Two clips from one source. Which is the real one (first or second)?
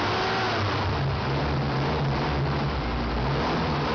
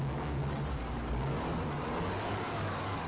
first